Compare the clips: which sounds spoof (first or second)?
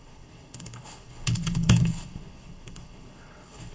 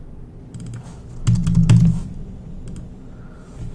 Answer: first